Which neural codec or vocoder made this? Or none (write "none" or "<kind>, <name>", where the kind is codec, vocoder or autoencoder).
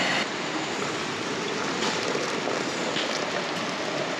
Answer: none